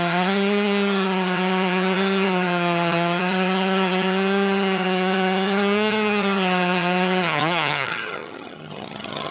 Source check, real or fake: fake